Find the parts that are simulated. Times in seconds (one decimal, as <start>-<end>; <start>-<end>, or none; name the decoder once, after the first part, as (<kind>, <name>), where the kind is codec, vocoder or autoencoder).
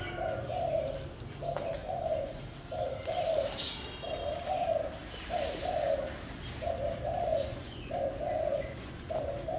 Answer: 1.8-2.4 (vocoder, Vocos); 7.3-8.1; 8.5-9.1